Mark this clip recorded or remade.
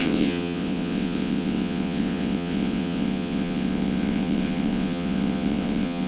remade